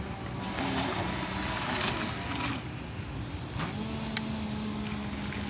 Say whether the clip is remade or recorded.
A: recorded